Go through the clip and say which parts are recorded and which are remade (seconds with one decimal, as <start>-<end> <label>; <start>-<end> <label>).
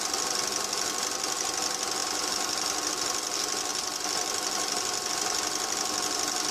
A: 0.0-2.0 recorded; 2.0-2.9 remade; 2.9-3.7 recorded; 3.7-5.1 remade; 5.1-6.5 recorded